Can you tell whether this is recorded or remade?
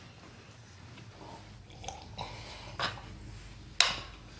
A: recorded